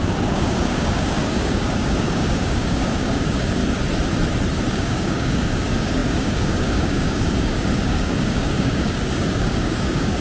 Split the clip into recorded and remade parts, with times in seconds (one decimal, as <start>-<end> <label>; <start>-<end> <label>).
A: 0.0-3.6 remade; 3.6-4.7 recorded; 4.7-10.2 remade